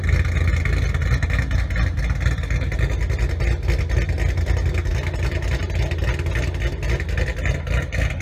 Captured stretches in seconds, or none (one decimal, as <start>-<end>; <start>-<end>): 0.0-8.2